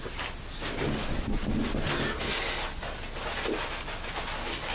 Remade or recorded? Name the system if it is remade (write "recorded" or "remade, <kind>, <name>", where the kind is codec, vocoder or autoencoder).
recorded